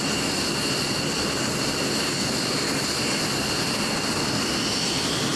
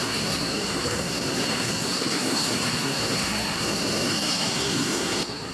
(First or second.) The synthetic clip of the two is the second